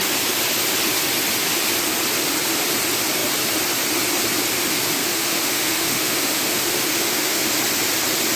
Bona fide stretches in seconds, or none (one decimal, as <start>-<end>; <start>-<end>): 0.0-5.0; 7.5-8.4